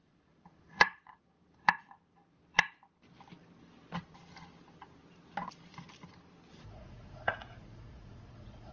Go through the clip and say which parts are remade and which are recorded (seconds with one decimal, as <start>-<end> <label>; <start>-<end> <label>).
0.0-1.2 remade; 1.2-6.5 recorded; 6.5-8.7 remade